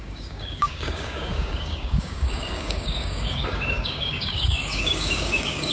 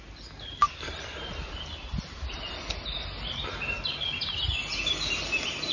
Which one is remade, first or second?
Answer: first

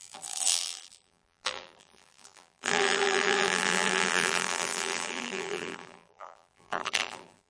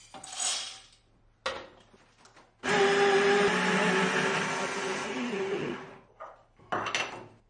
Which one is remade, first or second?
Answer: first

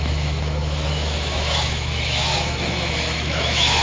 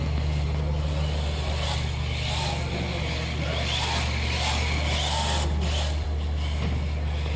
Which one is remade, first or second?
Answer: first